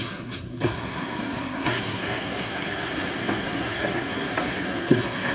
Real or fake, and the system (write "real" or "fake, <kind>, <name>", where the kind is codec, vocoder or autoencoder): fake, codec, SNAC